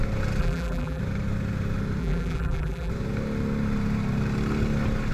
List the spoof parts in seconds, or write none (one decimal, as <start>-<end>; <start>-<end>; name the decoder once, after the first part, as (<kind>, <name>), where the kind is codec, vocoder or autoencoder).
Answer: 0.4-1.0 (vocoder, BigVGAN v2); 2.0-2.9